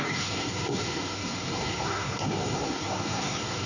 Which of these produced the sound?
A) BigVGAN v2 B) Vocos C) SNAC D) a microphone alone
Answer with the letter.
C